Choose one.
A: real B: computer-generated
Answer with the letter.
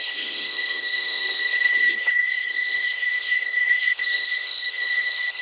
B